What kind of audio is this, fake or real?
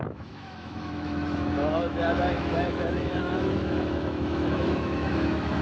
fake